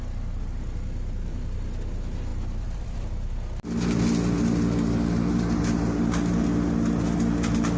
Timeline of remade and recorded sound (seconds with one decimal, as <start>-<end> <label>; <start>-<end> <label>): 0.0-2.3 recorded; 2.3-3.0 remade; 3.0-7.8 recorded